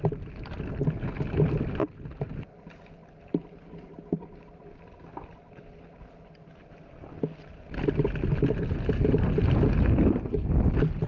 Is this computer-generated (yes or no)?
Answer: no